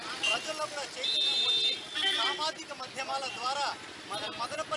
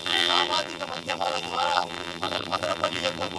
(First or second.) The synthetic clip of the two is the second